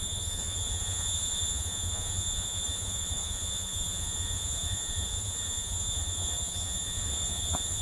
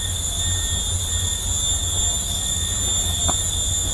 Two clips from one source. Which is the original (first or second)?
second